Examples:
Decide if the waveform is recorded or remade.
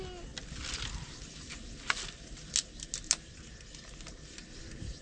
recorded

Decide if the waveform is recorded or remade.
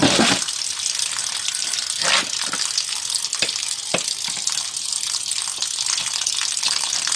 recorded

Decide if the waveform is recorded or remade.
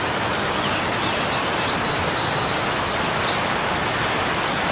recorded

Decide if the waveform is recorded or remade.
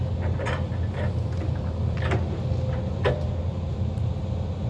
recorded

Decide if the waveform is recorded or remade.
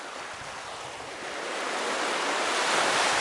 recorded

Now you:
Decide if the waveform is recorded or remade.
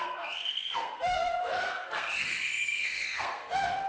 remade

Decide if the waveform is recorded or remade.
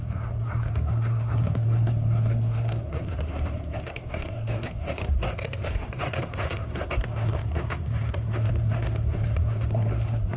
remade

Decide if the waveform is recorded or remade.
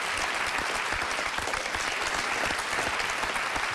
recorded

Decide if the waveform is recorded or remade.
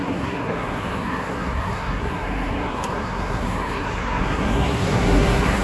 remade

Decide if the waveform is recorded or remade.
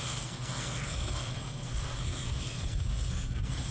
remade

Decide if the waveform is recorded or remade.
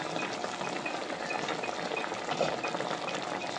recorded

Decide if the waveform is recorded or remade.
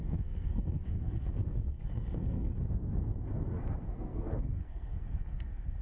remade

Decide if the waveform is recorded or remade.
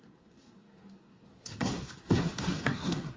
remade